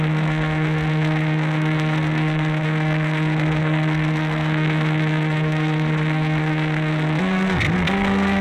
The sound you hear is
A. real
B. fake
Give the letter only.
B